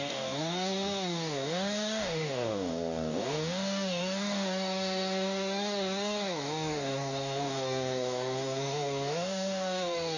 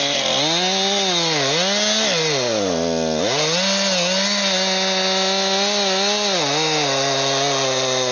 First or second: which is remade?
first